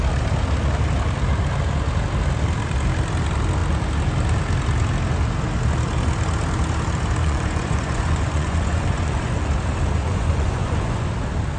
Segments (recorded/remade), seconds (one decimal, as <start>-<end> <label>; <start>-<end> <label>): 0.0-7.2 recorded; 7.2-9.5 remade; 9.5-10.0 recorded; 10.0-11.1 remade; 11.1-11.6 recorded